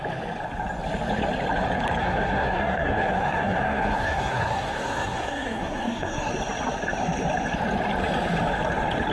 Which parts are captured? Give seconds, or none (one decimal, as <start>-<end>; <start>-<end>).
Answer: 0.0-2.0; 6.3-9.1

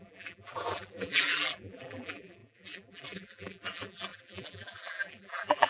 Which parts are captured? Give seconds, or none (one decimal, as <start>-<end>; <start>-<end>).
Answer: none

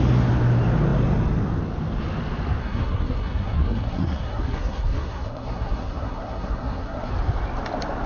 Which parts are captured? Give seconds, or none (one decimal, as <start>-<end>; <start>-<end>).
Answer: 0.0-2.6; 7.1-8.1

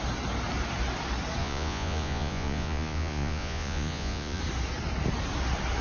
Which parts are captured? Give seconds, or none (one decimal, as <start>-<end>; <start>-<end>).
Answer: 0.0-1.4; 4.4-5.8

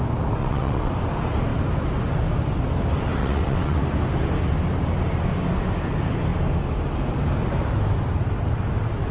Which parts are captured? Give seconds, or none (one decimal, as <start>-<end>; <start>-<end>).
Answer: 0.0-0.4; 0.9-3.2; 3.8-9.1

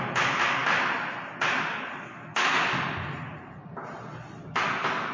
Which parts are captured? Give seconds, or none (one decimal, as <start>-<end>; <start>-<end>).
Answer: 0.0-5.1

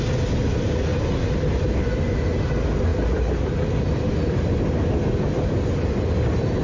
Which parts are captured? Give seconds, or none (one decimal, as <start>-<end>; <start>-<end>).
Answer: 0.0-6.6

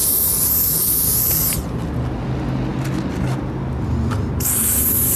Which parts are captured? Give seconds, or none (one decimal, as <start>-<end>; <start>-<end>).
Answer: 1.4-5.2